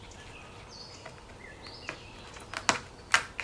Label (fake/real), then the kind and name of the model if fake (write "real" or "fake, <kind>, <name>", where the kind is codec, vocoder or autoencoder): real